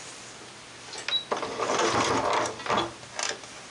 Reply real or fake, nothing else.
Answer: real